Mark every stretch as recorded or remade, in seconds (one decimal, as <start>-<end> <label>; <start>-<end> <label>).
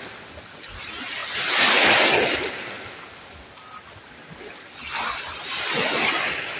0.0-6.6 recorded